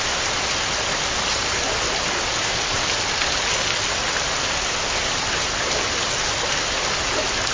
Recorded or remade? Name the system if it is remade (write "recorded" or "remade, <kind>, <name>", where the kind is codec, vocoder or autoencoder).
recorded